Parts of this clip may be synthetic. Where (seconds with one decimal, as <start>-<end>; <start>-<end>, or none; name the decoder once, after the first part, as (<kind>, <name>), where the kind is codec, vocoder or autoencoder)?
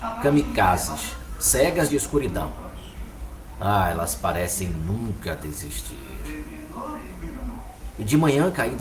0.5-1.9 (autoencoder, DAC-VAE); 5.0-7.2